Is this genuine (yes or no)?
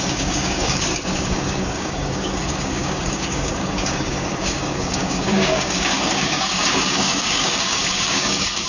no